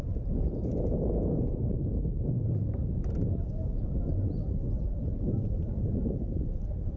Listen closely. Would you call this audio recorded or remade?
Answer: remade